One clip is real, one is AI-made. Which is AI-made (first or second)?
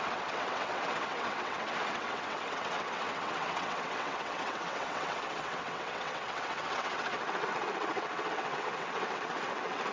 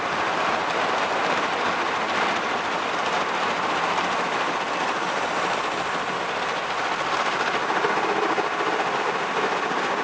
first